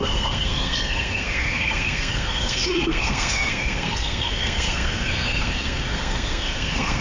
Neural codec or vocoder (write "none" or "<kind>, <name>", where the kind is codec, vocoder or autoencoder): codec, SNAC